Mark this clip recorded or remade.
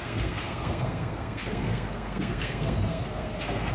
remade